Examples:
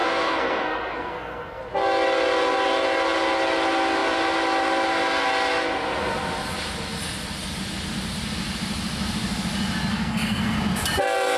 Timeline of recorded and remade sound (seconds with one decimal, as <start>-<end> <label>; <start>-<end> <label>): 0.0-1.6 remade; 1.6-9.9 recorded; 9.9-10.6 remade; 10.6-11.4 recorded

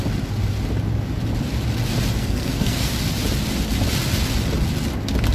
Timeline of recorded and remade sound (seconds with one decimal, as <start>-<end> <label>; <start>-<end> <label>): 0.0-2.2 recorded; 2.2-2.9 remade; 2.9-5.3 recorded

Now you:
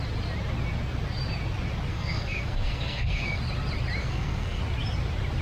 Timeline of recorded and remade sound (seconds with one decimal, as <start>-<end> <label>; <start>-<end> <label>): 0.0-1.9 recorded; 1.9-3.4 remade; 3.4-4.0 recorded; 4.0-4.6 remade; 4.6-5.4 recorded

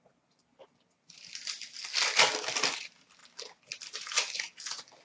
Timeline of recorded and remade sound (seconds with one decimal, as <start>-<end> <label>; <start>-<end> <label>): 0.0-5.0 recorded